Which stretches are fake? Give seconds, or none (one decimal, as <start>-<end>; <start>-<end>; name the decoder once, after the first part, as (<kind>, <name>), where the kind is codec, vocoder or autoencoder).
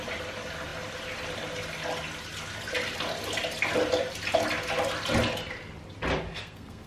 6.3-6.9 (codec, SNAC)